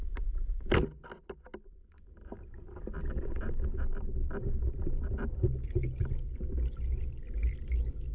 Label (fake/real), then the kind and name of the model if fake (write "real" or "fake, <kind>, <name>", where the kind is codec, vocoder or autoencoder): real